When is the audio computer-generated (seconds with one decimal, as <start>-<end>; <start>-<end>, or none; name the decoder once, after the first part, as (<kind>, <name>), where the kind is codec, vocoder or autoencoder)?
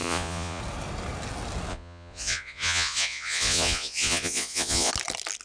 0.0-0.6 (vocoder, Vocos); 1.7-4.9